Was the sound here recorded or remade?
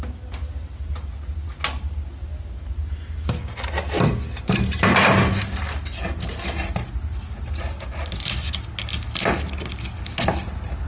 recorded